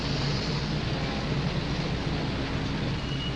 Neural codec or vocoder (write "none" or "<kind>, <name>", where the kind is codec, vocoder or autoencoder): none